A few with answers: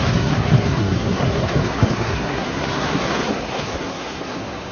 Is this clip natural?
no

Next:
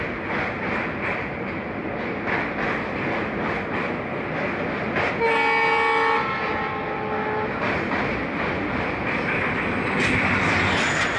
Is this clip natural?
yes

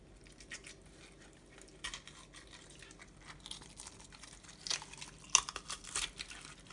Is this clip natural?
yes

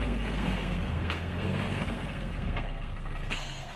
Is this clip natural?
no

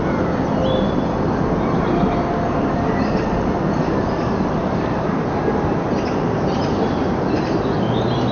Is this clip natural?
yes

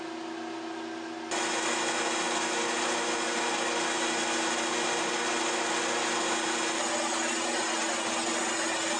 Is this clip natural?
yes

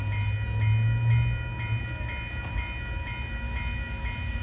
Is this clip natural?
yes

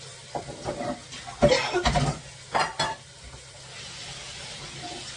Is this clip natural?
yes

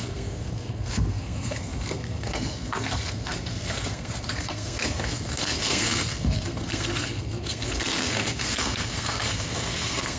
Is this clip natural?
no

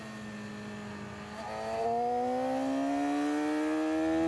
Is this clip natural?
yes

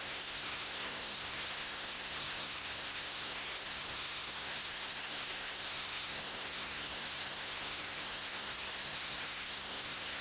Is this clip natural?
no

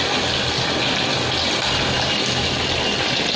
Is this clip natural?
yes